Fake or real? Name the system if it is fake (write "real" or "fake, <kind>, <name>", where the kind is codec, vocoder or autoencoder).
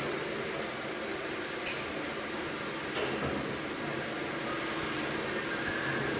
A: real